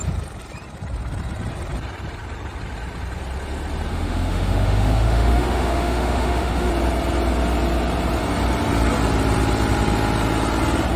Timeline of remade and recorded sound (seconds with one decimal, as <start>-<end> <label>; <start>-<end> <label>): 0.0-3.9 recorded; 3.9-6.7 remade; 6.7-11.0 recorded